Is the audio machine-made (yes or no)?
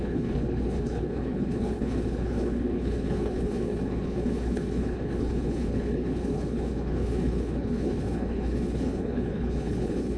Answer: yes